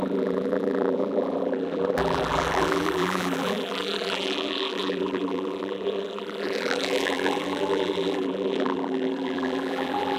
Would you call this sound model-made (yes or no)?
yes